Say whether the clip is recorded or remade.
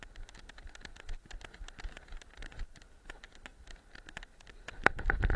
recorded